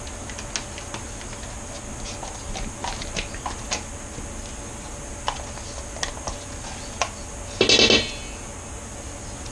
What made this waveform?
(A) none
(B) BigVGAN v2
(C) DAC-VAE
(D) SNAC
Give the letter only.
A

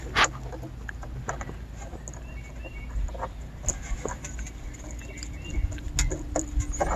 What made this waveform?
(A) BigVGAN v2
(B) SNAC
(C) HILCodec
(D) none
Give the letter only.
D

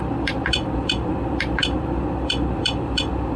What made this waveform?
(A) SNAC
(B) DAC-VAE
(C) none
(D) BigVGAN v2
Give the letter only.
D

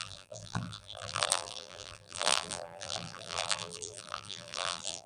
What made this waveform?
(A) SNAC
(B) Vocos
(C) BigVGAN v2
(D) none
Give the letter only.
C